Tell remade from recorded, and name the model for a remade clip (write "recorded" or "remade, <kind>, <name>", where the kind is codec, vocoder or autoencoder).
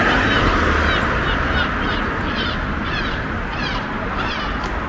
recorded